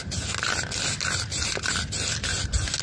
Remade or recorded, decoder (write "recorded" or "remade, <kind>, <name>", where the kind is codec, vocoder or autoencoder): recorded